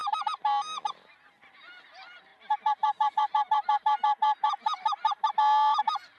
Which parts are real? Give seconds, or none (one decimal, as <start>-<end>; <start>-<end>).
0.0-2.3; 5.3-6.2